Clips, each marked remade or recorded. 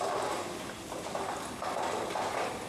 recorded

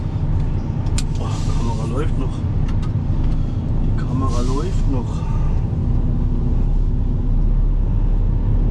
recorded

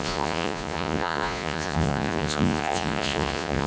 remade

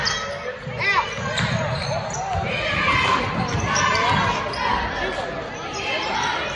recorded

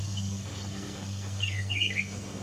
remade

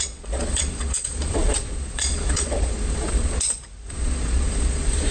remade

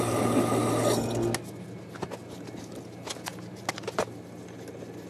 recorded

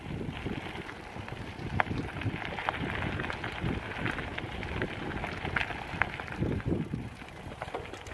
recorded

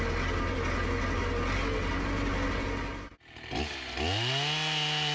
recorded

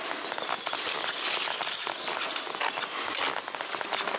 recorded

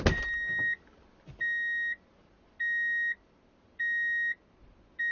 recorded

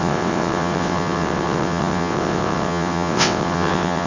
remade